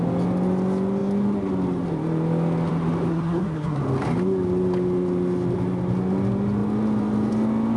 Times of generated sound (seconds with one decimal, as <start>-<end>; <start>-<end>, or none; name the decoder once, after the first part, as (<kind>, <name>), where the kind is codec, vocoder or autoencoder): 3.1-3.8 (codec, SNAC)